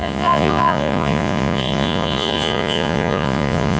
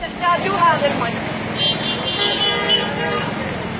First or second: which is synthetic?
first